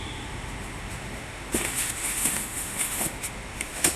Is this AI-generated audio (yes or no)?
yes